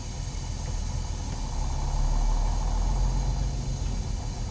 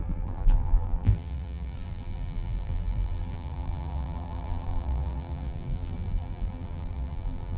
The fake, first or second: second